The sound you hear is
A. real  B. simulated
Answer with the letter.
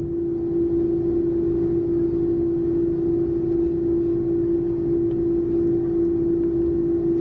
A